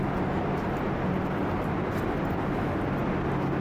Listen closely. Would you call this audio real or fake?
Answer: real